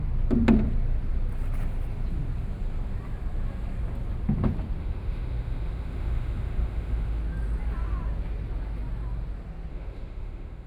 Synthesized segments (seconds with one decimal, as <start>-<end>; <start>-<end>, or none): 4.8-7.2; 9.7-10.7